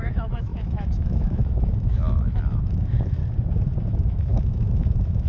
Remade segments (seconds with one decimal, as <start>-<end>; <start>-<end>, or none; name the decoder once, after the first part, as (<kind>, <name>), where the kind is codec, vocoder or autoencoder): 0.0-3.2 (autoencoder, DAC-VAE); 3.9-5.3